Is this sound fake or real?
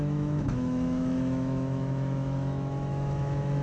fake